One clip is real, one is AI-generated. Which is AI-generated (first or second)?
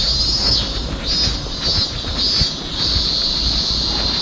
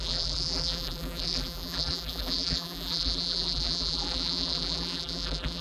second